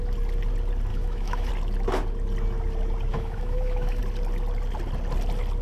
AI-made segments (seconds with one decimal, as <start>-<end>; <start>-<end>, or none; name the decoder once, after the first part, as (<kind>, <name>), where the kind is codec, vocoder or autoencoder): 0.9-1.5 (autoencoder, DAC-VAE); 3.1-4.0